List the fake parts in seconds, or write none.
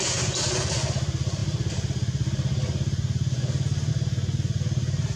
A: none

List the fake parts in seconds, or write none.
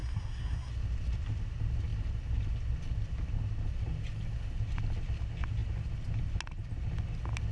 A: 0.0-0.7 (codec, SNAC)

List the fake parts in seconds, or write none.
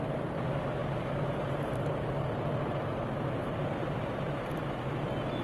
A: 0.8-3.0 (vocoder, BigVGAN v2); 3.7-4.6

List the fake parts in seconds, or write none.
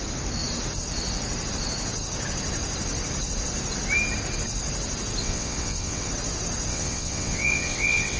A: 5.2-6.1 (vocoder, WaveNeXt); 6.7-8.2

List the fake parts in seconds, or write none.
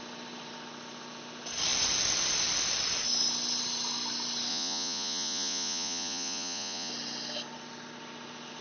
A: 4.5-6.9 (vocoder, Vocos)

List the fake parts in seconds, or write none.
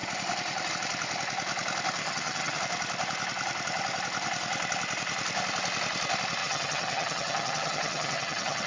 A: 2.0-2.6 (vocoder, HiFi-GAN); 6.4-8.7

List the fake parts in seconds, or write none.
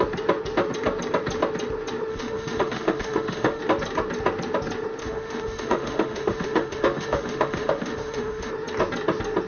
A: 2.1-3.6 (autoencoder, DAC-VAE); 5.0-8.5